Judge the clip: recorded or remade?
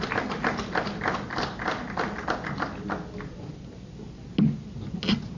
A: recorded